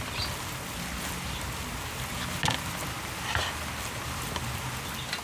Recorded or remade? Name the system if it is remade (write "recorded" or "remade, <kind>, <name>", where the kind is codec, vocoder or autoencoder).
recorded